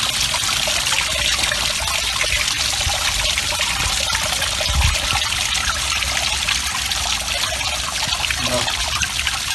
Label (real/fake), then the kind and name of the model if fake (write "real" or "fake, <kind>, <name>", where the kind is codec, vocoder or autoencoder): real